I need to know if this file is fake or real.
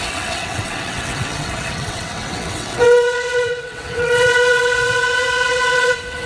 fake